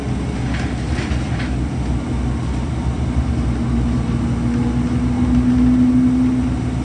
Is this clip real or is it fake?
real